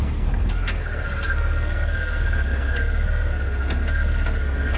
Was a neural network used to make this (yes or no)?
yes